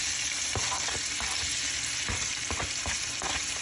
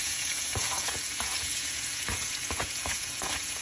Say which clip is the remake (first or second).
second